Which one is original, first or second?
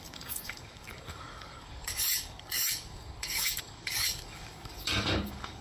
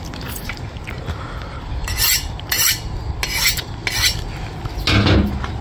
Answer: second